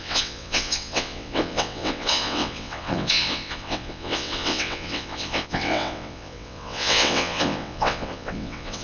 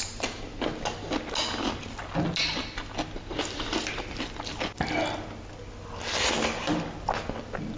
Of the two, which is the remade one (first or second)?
first